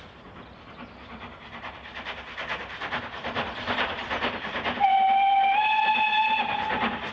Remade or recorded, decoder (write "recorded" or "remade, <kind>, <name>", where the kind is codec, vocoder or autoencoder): recorded